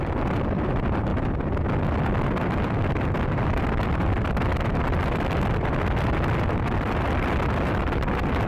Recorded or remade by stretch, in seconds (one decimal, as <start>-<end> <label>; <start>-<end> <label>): 0.0-1.1 remade; 1.1-1.9 recorded; 1.9-8.5 remade